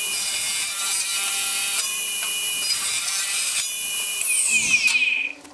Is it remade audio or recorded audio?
remade